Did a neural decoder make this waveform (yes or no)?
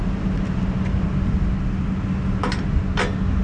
no